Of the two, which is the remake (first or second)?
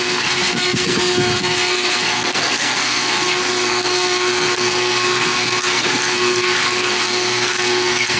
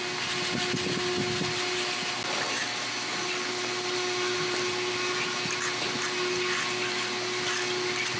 first